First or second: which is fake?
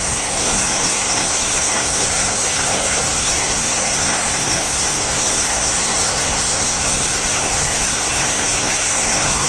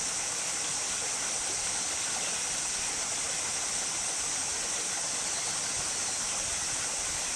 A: first